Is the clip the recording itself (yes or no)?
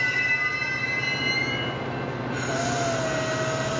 yes